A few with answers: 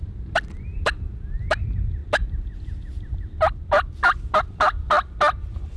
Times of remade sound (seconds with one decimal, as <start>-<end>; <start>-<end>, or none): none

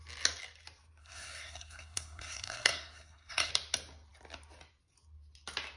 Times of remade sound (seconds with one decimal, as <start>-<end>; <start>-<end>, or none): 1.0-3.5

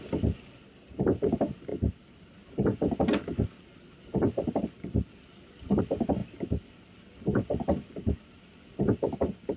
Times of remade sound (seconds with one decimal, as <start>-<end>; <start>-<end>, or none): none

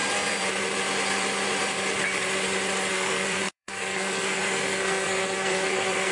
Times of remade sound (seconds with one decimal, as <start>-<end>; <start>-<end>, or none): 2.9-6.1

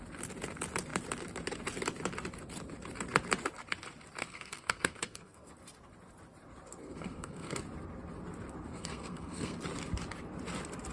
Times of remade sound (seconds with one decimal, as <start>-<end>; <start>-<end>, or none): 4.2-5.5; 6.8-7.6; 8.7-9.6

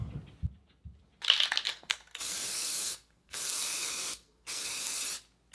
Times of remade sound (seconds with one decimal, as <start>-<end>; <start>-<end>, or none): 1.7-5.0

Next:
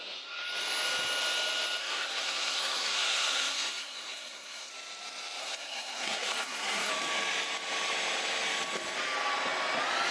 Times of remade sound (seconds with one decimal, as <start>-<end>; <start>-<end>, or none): 1.8-4.7; 5.4-6.9